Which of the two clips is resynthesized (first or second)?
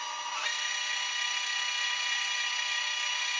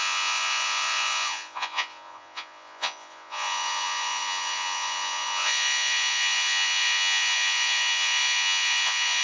second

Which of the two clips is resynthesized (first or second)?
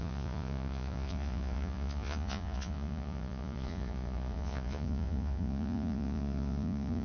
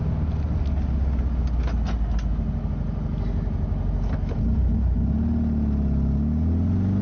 first